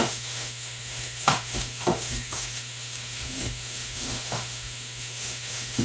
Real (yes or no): no